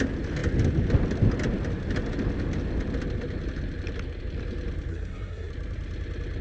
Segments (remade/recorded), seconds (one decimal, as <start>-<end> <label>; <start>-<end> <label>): 0.0-4.9 recorded; 4.9-5.5 remade; 5.5-6.4 recorded